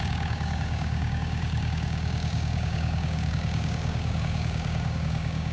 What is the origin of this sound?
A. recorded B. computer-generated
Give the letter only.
B